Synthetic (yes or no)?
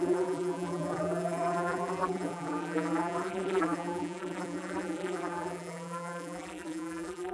yes